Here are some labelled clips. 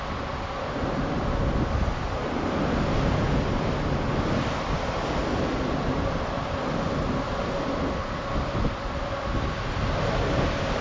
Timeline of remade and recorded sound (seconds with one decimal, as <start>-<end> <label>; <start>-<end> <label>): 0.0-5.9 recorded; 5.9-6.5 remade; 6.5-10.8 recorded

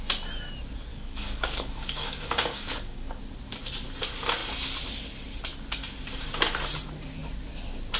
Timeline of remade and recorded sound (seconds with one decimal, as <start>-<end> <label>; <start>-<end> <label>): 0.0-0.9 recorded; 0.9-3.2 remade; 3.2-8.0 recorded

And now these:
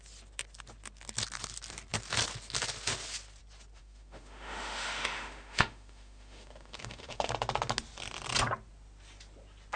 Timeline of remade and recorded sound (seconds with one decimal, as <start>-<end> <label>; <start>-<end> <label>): 0.0-3.8 recorded; 3.8-7.3 remade; 7.3-9.8 recorded

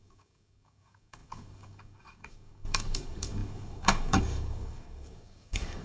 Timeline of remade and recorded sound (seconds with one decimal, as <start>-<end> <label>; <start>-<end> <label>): 0.0-5.8 remade

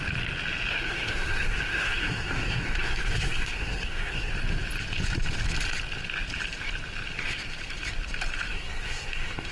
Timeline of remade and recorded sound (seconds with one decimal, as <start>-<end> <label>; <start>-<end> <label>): 0.0-0.7 recorded; 0.7-4.3 remade; 4.3-8.5 recorded; 8.5-9.5 remade